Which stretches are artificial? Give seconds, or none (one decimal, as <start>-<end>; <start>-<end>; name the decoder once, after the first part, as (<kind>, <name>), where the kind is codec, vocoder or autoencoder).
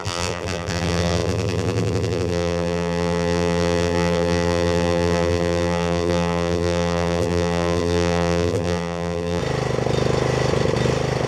0.0-9.4 (vocoder, BigVGAN v2)